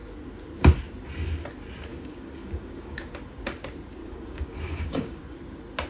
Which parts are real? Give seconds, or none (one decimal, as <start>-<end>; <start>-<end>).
0.0-1.9; 3.1-4.0; 5.2-5.9